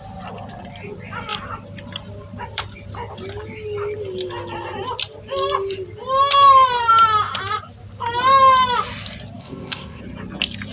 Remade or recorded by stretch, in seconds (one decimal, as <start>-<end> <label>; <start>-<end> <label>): 0.0-9.4 recorded; 9.4-10.0 remade; 10.0-10.7 recorded